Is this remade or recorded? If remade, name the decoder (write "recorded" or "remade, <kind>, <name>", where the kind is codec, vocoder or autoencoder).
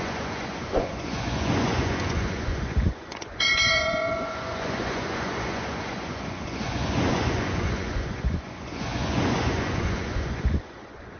remade, vocoder, Vocos